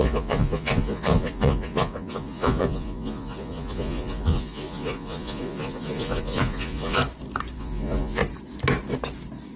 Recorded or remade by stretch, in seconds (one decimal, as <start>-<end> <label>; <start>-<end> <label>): 0.0-7.0 remade; 7.0-7.6 recorded; 7.6-8.2 remade; 8.2-9.6 recorded